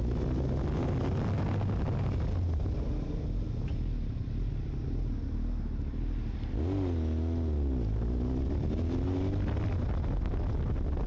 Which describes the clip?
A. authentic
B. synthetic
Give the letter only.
A